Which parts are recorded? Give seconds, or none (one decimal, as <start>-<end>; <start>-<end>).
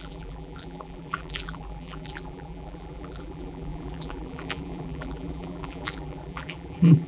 none